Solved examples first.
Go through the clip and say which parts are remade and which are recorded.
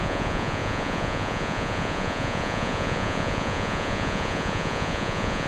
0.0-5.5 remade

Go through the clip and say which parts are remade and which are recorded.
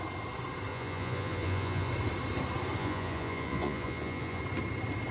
0.0-0.7 recorded; 0.7-1.9 remade; 1.9-2.8 recorded; 2.8-4.4 remade; 4.4-5.1 recorded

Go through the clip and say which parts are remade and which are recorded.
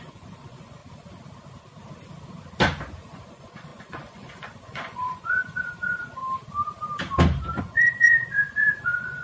0.0-0.8 remade; 0.8-3.0 recorded; 3.0-6.2 remade; 6.2-7.6 recorded; 7.6-9.2 remade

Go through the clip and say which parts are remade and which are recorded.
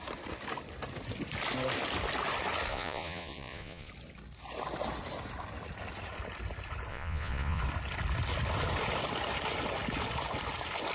0.0-2.7 recorded; 2.7-3.9 remade; 3.9-6.9 recorded; 6.9-7.6 remade; 7.6-10.9 recorded